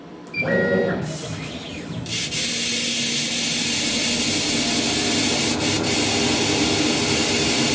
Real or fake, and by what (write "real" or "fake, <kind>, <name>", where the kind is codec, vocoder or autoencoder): real